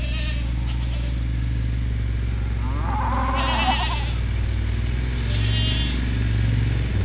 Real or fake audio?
real